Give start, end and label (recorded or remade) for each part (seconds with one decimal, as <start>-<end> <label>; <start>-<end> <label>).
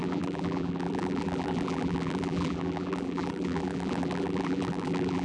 0.0-5.2 remade